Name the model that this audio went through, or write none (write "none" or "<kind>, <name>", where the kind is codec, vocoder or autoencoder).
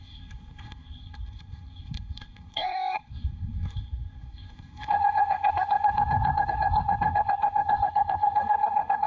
codec, SNAC